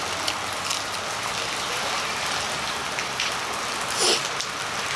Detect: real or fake real